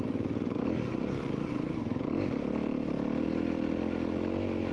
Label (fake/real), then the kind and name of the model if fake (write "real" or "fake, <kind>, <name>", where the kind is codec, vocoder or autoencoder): real